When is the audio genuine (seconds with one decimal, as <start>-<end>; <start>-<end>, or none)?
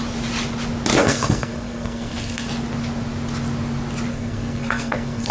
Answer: 0.0-1.0; 2.5-4.1